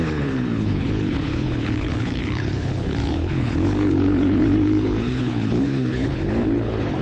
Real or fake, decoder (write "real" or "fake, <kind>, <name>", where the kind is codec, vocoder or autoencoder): fake, codec, HILCodec